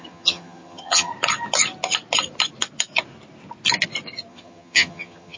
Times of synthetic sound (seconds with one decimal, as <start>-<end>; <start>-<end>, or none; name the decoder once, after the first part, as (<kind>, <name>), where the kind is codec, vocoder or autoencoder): 0.0-1.1 (vocoder, HiFi-GAN); 4.3-5.4